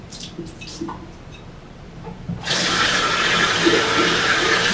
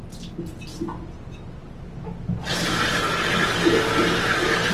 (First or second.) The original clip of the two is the second